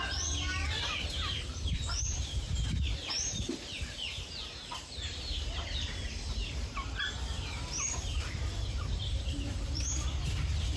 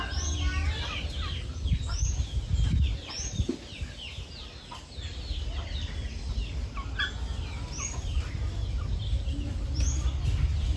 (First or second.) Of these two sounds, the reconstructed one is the first